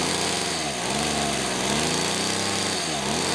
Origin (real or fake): real